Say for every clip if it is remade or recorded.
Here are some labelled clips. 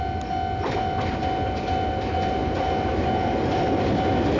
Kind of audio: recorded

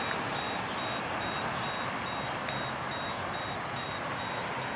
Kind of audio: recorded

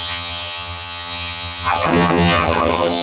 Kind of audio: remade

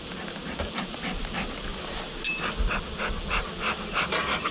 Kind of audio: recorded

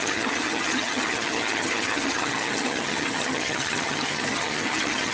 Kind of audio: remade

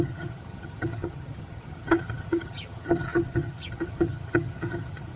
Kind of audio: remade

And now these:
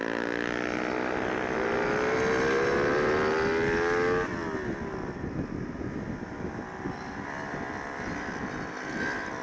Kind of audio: recorded